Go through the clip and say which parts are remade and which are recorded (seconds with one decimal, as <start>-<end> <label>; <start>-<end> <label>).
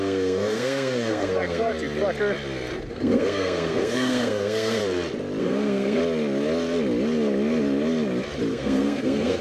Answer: 0.0-1.7 remade; 1.7-2.9 recorded; 2.9-4.8 remade; 4.8-5.4 recorded; 5.4-6.0 remade; 6.0-8.5 recorded; 8.5-9.4 remade